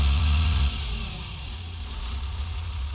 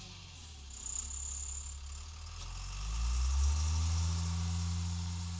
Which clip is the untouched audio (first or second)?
second